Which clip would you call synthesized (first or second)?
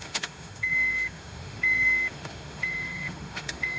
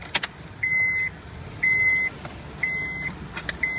first